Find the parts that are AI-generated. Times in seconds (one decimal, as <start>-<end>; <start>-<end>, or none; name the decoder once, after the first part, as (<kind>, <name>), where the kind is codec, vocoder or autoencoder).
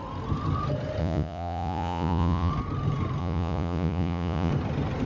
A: 1.0-2.5 (vocoder, Vocos); 3.2-4.5